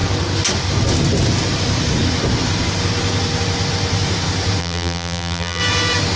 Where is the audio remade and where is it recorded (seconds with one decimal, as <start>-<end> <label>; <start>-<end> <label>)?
0.0-4.6 recorded; 4.6-5.6 remade; 5.6-6.2 recorded